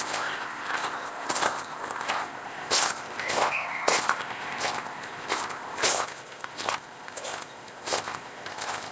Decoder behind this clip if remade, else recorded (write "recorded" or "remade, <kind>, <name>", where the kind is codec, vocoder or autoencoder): remade, codec, ZipCodec